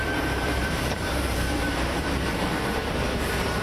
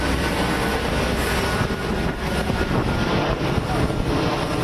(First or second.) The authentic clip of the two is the second